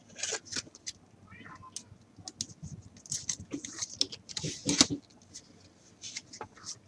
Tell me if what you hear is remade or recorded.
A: recorded